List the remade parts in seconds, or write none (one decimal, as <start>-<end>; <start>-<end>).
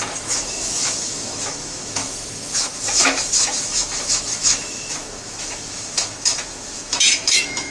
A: 0.0-7.7